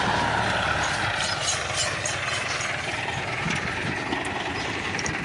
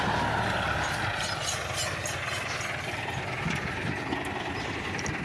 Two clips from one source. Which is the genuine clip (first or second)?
second